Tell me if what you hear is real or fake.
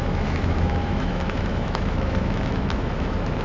fake